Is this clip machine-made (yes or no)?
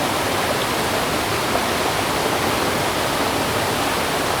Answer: no